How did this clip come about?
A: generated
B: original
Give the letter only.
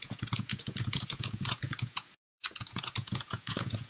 A